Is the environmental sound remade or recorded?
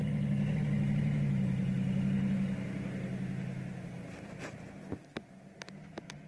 recorded